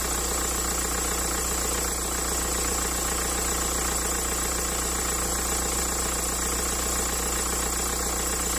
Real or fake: real